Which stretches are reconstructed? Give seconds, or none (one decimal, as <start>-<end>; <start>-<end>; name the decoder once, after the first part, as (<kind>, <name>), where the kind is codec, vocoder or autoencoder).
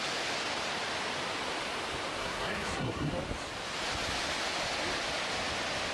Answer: 2.2-3.1 (codec, SNAC)